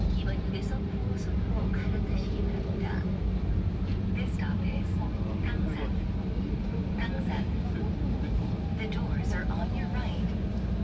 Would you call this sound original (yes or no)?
yes